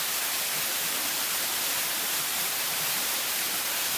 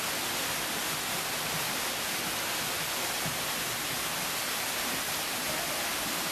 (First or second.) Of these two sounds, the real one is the second